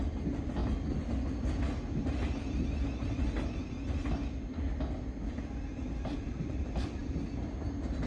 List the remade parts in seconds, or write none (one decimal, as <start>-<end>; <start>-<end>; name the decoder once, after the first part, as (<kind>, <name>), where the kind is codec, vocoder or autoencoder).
none